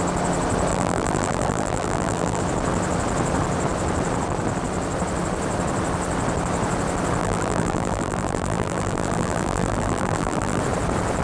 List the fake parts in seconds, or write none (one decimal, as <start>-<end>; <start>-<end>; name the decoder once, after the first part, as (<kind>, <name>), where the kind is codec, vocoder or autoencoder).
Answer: 0.7-2.4 (vocoder, BigVGAN v2); 7.2-10.6